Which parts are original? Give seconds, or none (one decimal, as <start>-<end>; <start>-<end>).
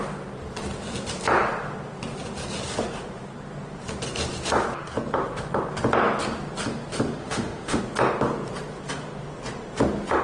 0.0-7.2; 7.8-10.2